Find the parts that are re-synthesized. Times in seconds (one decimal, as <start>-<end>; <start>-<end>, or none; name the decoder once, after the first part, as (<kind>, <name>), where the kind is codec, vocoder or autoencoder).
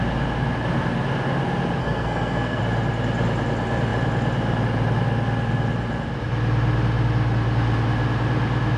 1.8-2.6 (codec, SNAC)